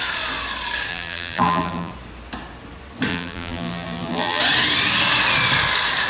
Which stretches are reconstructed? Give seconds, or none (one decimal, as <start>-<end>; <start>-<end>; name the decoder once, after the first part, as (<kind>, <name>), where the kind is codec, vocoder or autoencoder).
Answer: 0.9-1.9 (vocoder, BigVGAN v2); 3.1-4.4